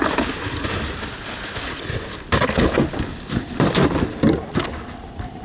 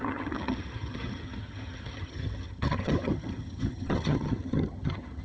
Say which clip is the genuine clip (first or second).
first